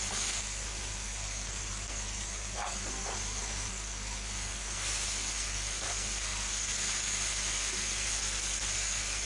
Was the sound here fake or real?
fake